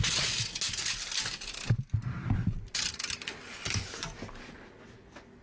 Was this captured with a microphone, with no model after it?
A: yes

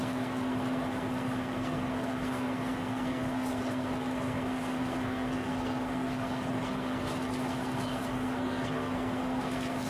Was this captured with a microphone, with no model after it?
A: no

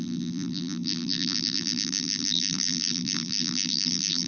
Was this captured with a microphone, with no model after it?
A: no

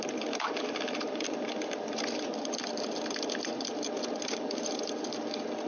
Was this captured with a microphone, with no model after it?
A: no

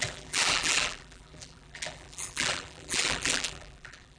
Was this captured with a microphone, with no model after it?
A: no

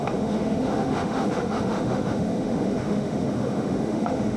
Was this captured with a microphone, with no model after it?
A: no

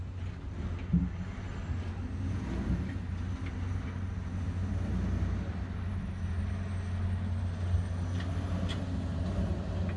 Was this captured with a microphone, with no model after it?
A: yes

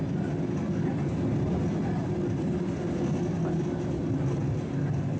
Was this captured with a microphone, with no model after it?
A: yes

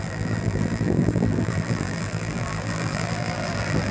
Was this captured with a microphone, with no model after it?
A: no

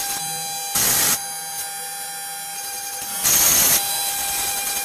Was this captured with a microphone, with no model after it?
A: yes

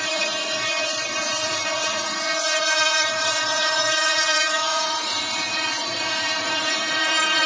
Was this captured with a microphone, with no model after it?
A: no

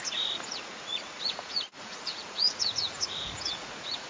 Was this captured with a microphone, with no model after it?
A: no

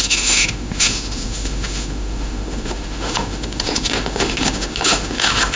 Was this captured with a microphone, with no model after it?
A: no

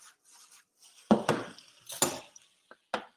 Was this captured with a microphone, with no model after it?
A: yes